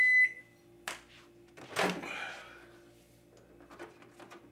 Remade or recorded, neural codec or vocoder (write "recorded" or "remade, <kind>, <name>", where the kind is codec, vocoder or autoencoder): recorded